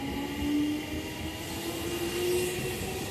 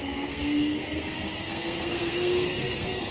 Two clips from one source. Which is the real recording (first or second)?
first